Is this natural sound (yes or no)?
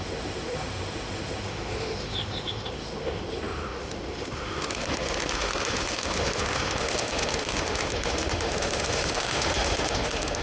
no